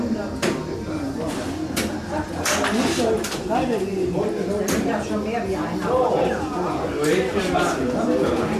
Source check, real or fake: real